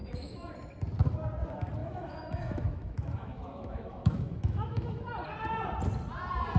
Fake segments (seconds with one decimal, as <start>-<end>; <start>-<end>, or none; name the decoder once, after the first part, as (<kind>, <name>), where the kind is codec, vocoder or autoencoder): 0.0-0.5 (autoencoder, DAC-VAE); 1.8-5.0